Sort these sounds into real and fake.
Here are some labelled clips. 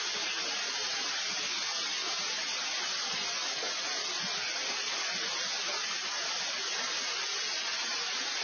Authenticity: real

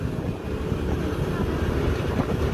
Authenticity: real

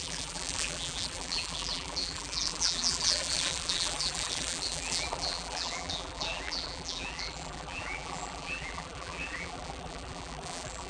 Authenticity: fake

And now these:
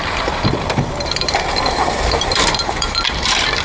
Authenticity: fake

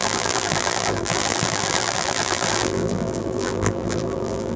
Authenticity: fake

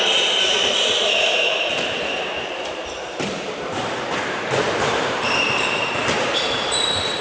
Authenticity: fake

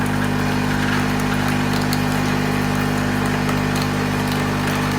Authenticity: real